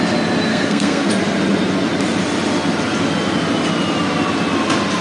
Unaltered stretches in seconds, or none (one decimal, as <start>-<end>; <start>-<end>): 0.0-0.5; 1.1-5.0